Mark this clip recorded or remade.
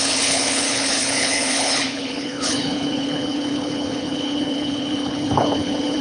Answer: remade